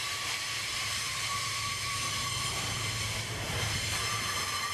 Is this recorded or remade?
remade